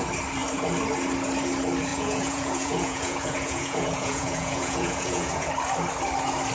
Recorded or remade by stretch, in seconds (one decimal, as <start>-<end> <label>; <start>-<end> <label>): 0.0-1.9 recorded; 1.9-5.5 remade; 5.5-6.5 recorded